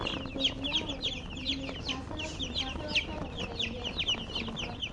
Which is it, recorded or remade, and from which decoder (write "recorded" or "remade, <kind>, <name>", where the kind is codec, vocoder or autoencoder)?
recorded